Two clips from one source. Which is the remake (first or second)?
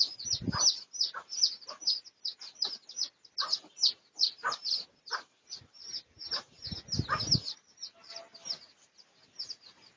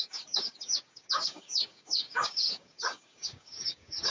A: second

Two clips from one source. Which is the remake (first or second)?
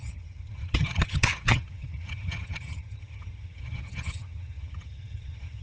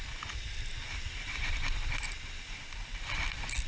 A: first